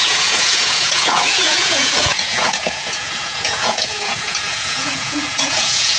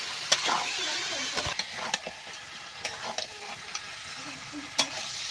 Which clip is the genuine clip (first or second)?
second